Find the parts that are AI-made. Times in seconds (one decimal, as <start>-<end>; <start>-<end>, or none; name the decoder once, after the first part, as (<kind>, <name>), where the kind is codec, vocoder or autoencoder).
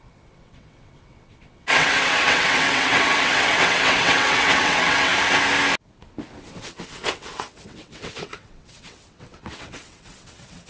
0.0-5.1 (vocoder, WaveNeXt); 6.4-10.7